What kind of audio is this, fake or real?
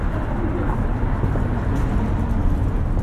real